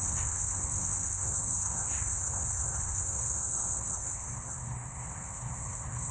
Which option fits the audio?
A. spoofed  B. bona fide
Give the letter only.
A